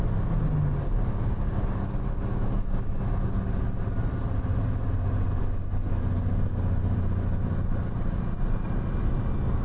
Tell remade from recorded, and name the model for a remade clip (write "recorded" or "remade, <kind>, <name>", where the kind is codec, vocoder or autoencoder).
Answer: recorded